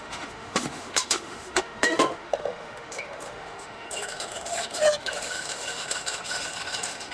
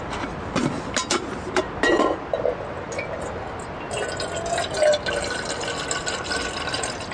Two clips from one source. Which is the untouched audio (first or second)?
second